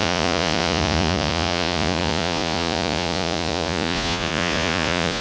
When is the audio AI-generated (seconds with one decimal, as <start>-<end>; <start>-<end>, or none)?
0.0-5.2